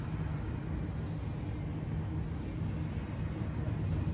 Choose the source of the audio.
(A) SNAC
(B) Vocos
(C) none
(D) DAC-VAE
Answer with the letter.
C